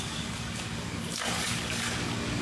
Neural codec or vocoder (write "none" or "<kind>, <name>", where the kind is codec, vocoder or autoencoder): codec, DAC